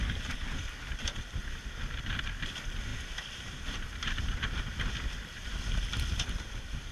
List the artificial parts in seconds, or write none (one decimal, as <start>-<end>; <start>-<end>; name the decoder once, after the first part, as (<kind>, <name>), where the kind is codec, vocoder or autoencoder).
none